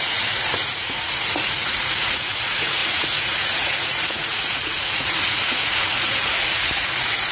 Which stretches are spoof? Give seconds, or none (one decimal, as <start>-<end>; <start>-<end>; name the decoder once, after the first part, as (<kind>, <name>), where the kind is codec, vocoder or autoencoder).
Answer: 0.0-7.3 (vocoder, Vocos)

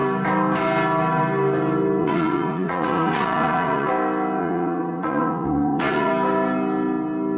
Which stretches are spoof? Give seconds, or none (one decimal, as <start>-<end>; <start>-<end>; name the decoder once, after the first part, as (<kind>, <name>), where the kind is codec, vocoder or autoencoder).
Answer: 2.0-3.9 (vocoder, Vocos); 4.4-6.1

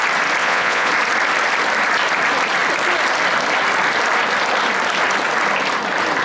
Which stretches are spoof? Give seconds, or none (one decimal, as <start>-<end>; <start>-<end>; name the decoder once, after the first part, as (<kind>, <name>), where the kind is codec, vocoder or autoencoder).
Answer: 0.4-0.9 (vocoder, Vocos)

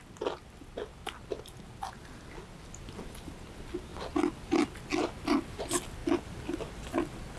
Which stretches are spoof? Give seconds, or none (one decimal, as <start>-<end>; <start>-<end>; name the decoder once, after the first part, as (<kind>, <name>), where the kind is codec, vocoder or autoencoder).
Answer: none

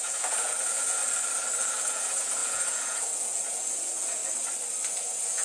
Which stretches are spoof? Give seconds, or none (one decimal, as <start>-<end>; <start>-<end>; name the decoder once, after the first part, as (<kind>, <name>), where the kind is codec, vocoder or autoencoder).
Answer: 0.0-1.0 (vocoder, Vocos); 1.6-4.2; 4.9-5.4

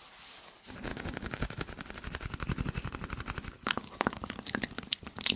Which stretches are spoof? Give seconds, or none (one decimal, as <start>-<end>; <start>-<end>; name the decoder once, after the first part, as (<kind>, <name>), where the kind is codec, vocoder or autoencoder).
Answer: none